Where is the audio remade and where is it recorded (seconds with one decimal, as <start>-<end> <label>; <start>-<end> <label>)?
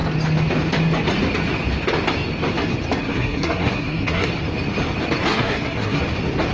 0.0-3.0 recorded; 3.0-4.3 remade; 4.3-5.3 recorded; 5.3-6.0 remade; 6.0-6.5 recorded